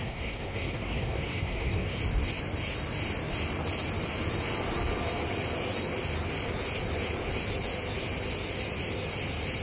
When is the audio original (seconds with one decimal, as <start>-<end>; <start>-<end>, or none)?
2.0-9.6

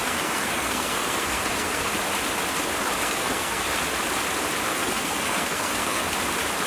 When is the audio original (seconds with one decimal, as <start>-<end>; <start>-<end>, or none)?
1.9-3.0; 3.8-4.7; 6.1-6.7

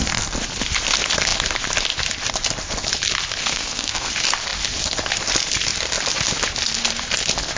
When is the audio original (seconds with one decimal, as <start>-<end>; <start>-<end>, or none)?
0.0-3.4; 4.1-7.6

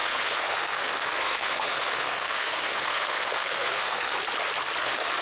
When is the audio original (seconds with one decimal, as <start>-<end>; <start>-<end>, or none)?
4.1-4.8